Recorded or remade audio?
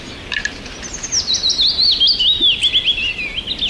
recorded